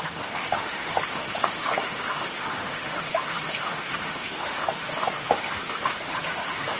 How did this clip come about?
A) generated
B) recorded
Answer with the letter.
A